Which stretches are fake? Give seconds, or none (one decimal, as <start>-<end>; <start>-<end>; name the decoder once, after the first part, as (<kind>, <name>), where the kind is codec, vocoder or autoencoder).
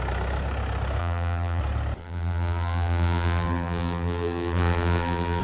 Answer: 1.0-1.6 (vocoder, BigVGAN v2); 2.0-5.4